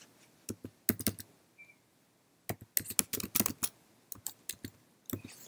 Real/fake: real